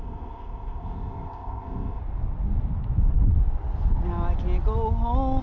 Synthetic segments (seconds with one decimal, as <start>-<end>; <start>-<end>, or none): 0.0-2.0